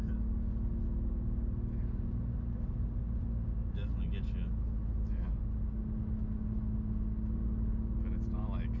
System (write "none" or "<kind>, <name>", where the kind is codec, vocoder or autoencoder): none